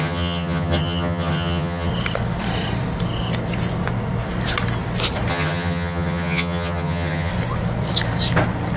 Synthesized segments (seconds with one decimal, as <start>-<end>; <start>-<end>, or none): 0.0-1.9; 5.3-7.3